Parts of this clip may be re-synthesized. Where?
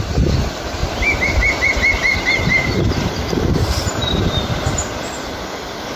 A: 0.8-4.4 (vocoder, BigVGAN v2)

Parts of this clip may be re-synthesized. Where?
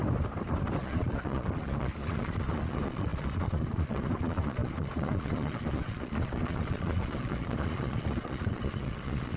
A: 0.8-9.4 (vocoder, Vocos)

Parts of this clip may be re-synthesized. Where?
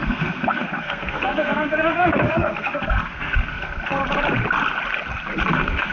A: 0.0-4.0 (codec, SNAC); 5.5-5.9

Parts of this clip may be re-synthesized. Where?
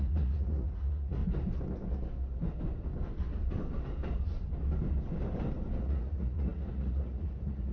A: 0.0-1.2 (vocoder, Vocos); 5.8-7.7